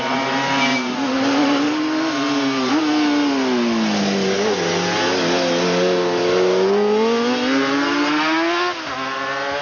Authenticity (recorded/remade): recorded